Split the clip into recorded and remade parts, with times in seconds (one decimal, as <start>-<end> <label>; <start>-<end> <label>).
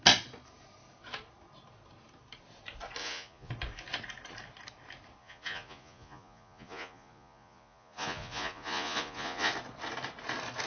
0.0-3.0 recorded; 3.0-3.5 remade; 3.5-5.2 recorded; 5.2-9.5 remade; 9.5-10.7 recorded